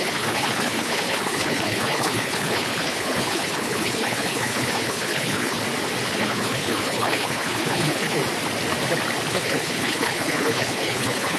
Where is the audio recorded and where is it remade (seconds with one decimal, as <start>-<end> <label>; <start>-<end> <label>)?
0.0-5.6 remade; 5.6-6.1 recorded; 6.1-8.2 remade; 8.2-9.3 recorded; 9.3-11.4 remade